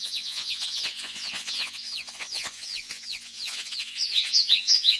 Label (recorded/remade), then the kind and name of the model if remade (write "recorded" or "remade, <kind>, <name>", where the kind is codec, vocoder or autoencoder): remade, vocoder, Vocos